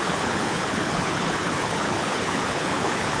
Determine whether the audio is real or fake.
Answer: fake